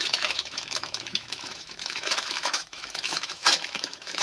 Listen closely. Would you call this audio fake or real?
fake